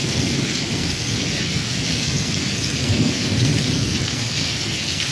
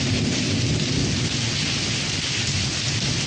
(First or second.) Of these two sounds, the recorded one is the second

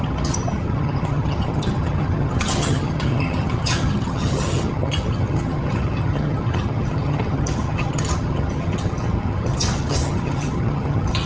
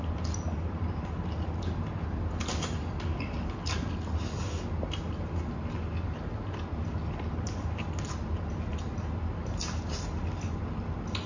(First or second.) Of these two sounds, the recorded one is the second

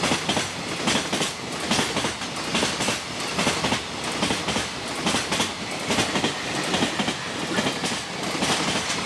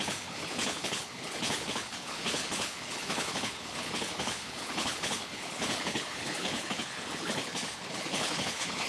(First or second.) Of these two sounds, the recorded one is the first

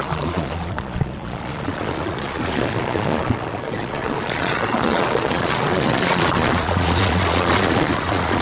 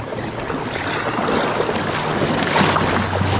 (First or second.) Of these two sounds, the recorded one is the second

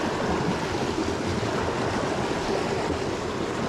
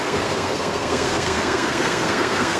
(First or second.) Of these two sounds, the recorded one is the first